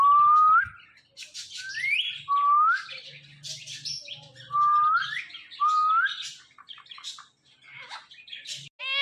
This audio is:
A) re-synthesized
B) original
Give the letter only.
B